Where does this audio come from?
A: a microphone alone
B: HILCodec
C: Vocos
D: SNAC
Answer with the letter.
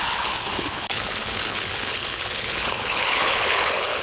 B